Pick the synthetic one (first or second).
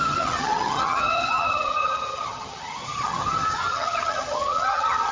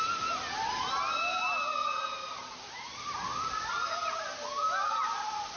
first